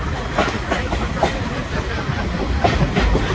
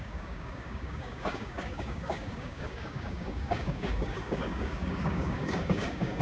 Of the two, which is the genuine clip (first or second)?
first